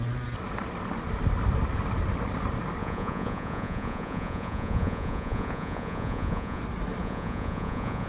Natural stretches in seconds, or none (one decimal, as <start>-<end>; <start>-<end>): 0.0-2.8; 6.6-7.0